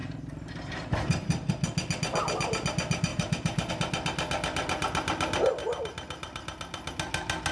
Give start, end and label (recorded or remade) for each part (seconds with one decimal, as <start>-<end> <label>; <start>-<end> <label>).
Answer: 0.0-1.5 remade; 1.5-3.1 recorded; 3.1-3.7 remade; 3.7-7.5 recorded